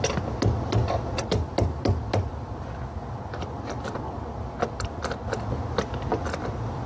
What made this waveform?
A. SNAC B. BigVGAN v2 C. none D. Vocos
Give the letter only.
C